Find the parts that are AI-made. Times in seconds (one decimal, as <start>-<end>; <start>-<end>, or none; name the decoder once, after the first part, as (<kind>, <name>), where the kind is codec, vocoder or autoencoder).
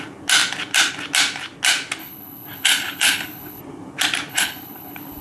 2.0-3.6 (codec, HILCodec); 4.3-5.2